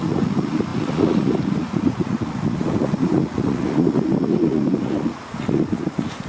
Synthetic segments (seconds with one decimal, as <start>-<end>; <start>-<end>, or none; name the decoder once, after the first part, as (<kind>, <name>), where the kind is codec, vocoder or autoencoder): 0.0-6.3 (vocoder, Vocos)